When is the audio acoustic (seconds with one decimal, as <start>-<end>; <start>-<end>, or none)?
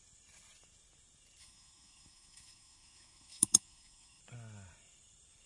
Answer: 0.0-1.4; 4.2-5.5